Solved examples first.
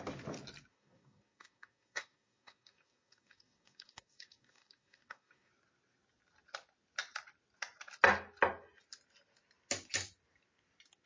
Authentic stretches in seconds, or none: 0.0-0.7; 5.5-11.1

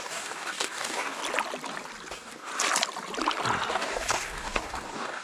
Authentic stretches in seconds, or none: 1.2-2.1; 2.5-3.7

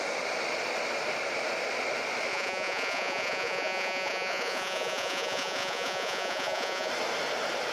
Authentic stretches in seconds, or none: 0.0-2.3; 6.9-7.7

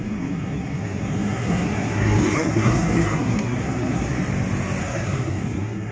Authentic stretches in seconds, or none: 4.2-4.8